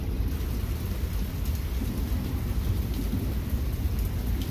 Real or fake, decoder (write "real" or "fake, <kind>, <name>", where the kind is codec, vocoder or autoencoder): real